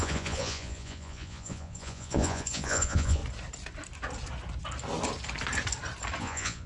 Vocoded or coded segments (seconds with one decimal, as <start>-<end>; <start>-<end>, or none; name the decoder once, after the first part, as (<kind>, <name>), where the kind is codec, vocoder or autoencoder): 0.0-3.2 (vocoder, Vocos); 6.2-6.7